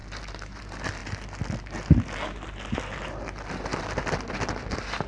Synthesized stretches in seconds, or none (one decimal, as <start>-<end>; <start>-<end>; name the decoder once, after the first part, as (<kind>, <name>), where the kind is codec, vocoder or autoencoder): none